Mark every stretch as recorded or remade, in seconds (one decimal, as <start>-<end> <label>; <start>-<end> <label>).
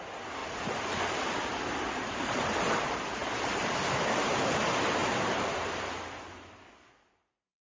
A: 0.0-0.4 recorded; 0.4-2.7 remade; 2.7-3.2 recorded; 3.2-4.5 remade; 4.5-7.8 recorded